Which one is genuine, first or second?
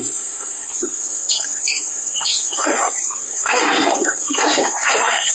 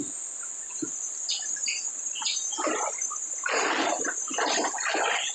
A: second